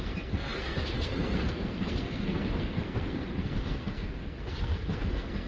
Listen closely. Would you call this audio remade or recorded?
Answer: remade